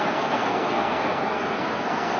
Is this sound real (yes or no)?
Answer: no